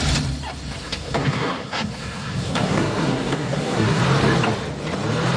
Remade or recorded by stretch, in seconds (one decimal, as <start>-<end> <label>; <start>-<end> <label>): 0.0-0.8 recorded; 0.8-4.0 remade; 4.0-5.4 recorded